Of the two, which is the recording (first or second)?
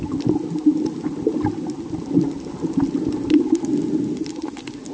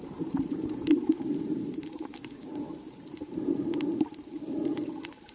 first